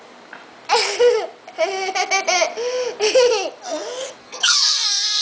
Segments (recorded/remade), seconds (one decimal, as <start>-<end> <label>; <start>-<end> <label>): 0.0-4.2 recorded; 4.2-5.2 remade